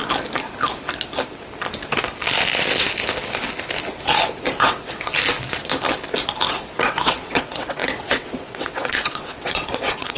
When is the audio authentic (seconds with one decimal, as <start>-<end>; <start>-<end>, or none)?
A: 0.0-4.6; 5.1-6.5